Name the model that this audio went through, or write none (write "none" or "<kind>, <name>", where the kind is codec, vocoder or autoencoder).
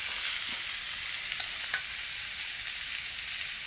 none